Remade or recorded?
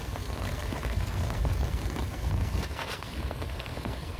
remade